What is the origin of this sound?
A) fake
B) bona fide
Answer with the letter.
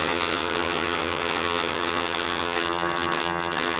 A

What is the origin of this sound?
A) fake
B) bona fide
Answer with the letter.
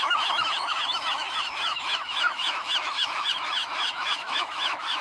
A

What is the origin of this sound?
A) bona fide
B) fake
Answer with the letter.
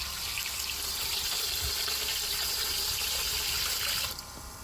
A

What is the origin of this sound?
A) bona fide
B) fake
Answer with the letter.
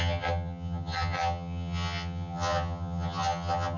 B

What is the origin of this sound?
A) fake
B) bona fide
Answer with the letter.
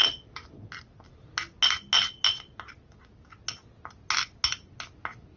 B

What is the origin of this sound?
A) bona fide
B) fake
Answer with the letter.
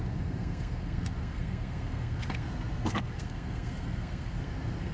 B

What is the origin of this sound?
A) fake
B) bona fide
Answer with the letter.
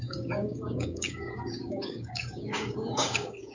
A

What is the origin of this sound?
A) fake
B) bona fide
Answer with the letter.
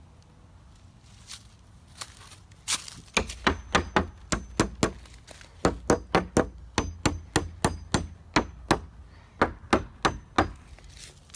B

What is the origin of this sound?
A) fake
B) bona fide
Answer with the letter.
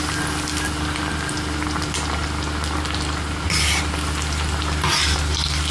B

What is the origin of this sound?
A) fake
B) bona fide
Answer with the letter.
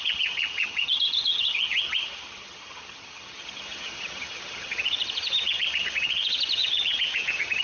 A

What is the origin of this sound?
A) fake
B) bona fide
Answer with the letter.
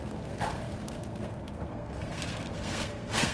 A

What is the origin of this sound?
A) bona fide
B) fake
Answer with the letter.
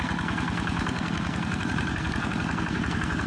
B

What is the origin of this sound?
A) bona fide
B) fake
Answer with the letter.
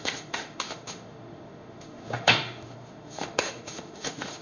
B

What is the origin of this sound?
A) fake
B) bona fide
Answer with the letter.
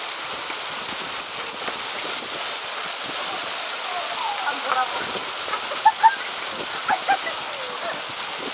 A